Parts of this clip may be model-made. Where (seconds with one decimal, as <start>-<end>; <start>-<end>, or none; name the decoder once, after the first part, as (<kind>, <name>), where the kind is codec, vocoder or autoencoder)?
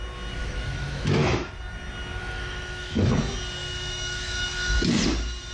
0.4-1.5 (autoencoder, DAC-VAE); 2.2-3.1; 3.6-4.9